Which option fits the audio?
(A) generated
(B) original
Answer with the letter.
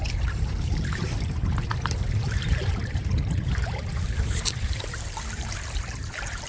A